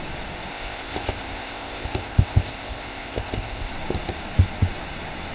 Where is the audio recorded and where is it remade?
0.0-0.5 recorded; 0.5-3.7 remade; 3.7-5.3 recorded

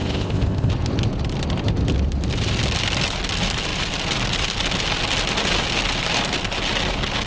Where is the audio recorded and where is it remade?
0.0-0.7 remade; 0.7-7.3 recorded